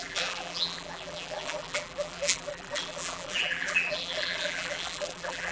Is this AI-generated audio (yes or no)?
yes